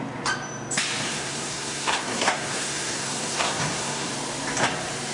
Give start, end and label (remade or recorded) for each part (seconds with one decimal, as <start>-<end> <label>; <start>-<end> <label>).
0.0-1.0 recorded; 1.0-4.1 remade; 4.1-5.1 recorded